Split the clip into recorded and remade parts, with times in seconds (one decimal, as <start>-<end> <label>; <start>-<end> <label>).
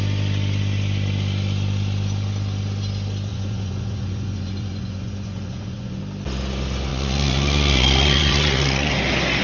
0.0-3.3 recorded; 3.3-6.0 remade; 6.0-6.9 recorded; 6.9-8.9 remade; 8.9-9.4 recorded